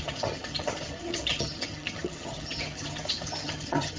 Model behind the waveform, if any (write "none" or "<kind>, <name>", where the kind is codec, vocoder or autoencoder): vocoder, HiFi-GAN